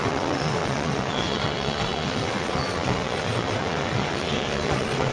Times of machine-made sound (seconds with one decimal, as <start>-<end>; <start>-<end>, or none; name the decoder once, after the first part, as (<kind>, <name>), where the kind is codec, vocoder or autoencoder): 0.0-5.1 (vocoder, WaveNeXt)